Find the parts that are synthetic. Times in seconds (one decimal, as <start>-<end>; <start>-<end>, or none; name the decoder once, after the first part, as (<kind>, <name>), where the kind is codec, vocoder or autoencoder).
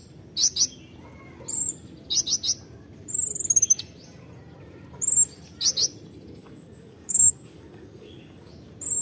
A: 6.4-8.5 (codec, DAC)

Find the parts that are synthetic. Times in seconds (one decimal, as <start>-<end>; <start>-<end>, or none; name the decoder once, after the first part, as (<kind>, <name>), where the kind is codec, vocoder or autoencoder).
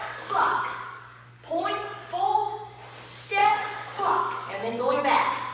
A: 0.0-2.2 (codec, DAC); 3.4-5.0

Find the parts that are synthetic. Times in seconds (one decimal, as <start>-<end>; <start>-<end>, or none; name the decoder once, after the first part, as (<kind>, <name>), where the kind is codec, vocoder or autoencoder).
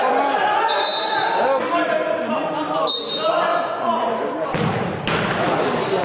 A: 3.5-4.1 (vocoder, Vocos)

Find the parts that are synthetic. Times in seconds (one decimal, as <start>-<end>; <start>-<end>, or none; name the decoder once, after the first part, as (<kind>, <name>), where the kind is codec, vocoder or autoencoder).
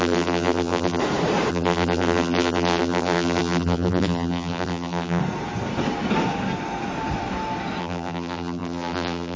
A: 0.0-1.0 (vocoder, BigVGAN v2); 1.5-5.2; 7.8-9.4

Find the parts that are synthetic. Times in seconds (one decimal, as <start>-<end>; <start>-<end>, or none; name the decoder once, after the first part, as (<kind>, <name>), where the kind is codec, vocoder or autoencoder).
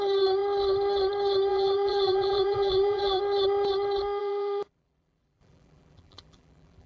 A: 1.5-3.2 (vocoder, BigVGAN v2); 4.2-6.9